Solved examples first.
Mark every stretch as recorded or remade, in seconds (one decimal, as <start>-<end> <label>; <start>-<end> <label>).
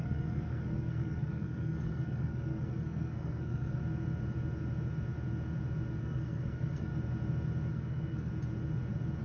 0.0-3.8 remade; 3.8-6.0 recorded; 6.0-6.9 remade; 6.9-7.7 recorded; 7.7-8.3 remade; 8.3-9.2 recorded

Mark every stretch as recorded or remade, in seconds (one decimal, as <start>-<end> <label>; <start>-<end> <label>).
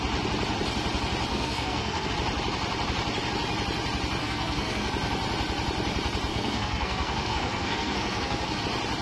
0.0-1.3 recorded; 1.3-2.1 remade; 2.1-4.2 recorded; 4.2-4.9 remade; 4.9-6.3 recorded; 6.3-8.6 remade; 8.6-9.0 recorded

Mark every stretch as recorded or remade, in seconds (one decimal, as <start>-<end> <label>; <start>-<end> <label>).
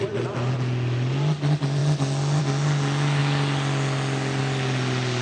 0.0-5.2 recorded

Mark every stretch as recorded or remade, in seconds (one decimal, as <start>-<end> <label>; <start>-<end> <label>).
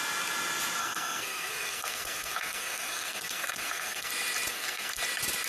0.0-0.8 recorded; 0.8-4.1 remade; 4.1-4.5 recorded; 4.5-5.0 remade; 5.0-5.5 recorded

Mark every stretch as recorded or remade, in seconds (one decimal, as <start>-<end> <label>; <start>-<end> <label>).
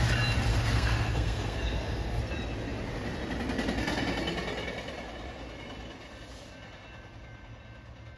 0.0-0.5 recorded; 0.5-2.2 remade; 2.2-8.2 recorded